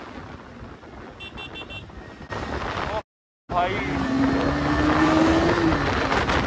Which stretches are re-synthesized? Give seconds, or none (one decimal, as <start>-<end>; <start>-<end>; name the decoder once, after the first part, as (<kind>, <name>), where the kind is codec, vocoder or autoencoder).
none